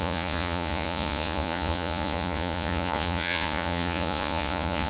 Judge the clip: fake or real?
fake